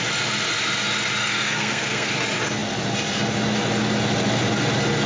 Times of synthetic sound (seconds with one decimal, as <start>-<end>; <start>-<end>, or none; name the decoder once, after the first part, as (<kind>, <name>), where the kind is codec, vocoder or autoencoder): 1.2-2.1 (codec, SNAC)